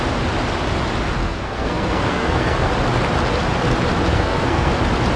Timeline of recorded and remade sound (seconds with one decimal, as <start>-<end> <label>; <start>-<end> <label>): 0.0-1.2 recorded; 1.2-2.7 remade; 2.7-4.1 recorded; 4.1-4.7 remade; 4.7-5.2 recorded